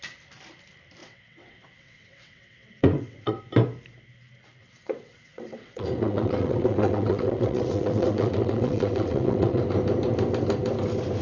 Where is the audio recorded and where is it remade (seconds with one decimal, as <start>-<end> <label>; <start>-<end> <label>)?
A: 0.0-1.0 recorded; 1.0-3.4 remade; 3.4-4.6 recorded; 4.6-9.6 remade; 9.6-11.2 recorded

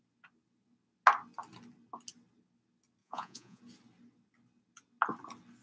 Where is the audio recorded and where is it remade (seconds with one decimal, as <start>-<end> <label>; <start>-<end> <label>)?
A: 0.0-3.0 recorded; 3.0-3.6 remade; 3.6-5.6 recorded

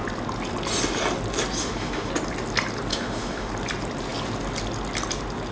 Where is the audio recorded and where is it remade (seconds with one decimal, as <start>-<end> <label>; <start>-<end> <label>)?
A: 0.0-1.6 recorded; 1.6-2.1 remade; 2.1-2.9 recorded; 2.9-3.5 remade; 3.5-5.5 recorded

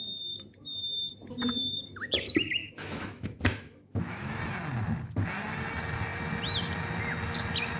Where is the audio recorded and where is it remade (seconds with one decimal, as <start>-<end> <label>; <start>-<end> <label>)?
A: 0.0-2.6 recorded; 2.6-4.4 remade; 4.4-7.8 recorded

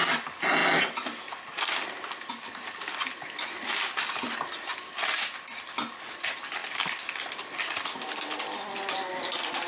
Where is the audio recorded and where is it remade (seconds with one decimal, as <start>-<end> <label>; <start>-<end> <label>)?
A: 0.0-9.7 recorded

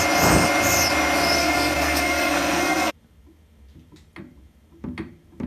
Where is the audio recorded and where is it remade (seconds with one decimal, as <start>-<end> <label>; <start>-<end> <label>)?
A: 0.0-1.4 recorded; 1.4-2.9 remade; 2.9-5.5 recorded

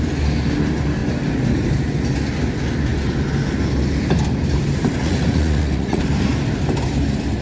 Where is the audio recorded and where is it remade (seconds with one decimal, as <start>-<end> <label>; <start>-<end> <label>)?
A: 0.0-5.0 recorded; 5.0-6.0 remade; 6.0-7.4 recorded